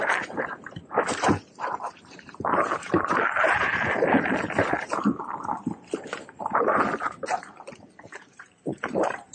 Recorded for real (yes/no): no